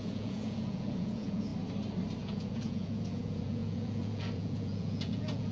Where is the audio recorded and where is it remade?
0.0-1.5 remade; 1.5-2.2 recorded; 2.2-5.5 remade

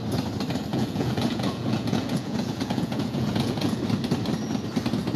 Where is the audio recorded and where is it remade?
0.0-0.7 recorded; 0.7-3.8 remade; 3.8-5.2 recorded

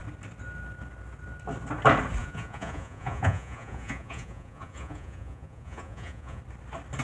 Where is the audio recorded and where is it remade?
0.0-2.2 recorded; 2.2-6.4 remade; 6.4-7.0 recorded

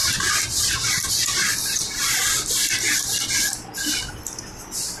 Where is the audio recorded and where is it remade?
0.0-5.0 recorded

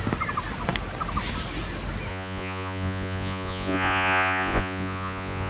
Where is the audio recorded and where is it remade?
0.0-2.1 recorded; 2.1-5.5 remade